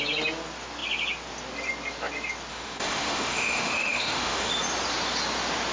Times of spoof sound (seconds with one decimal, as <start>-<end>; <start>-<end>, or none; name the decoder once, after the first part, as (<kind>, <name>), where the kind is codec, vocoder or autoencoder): 2.5-4.5 (autoencoder, DAC-VAE)